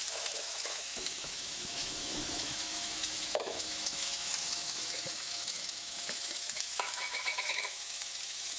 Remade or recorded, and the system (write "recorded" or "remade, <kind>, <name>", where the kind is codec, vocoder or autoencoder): remade, autoencoder, DAC-VAE